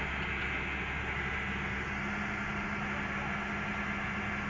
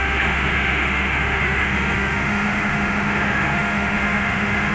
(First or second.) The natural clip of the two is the first